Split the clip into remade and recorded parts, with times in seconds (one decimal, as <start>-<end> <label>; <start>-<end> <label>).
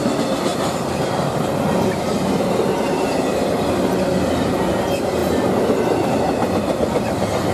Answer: 0.0-0.5 recorded; 0.5-1.3 remade; 1.3-7.5 recorded